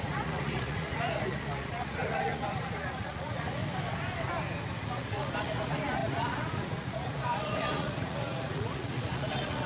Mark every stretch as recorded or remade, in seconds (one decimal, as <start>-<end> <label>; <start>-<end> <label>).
0.0-3.6 remade; 3.6-4.8 recorded; 4.8-9.7 remade